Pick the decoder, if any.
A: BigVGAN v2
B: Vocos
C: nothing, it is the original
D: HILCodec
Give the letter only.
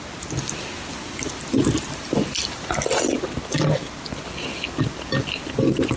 C